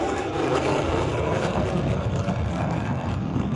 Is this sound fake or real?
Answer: fake